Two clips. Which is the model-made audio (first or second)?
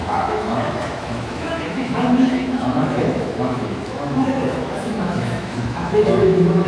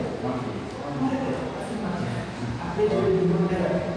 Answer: first